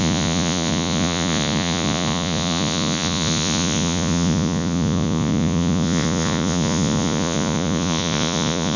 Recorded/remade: remade